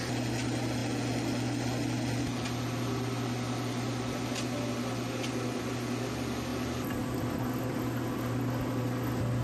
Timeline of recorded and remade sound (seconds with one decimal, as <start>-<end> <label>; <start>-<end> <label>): 0.0-9.4 recorded